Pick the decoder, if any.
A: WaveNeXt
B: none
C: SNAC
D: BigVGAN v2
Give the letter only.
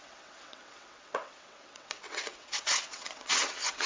A